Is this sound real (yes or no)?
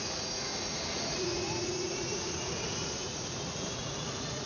no